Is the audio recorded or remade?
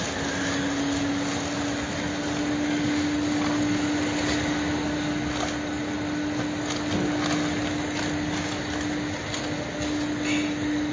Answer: recorded